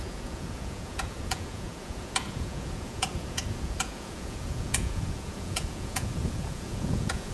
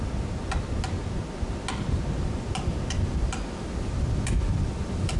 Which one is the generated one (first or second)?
first